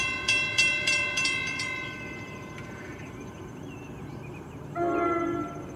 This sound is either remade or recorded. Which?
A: remade